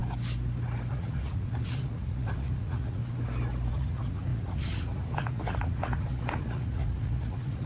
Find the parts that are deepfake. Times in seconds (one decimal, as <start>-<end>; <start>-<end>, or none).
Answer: 0.9-3.0; 3.7-7.7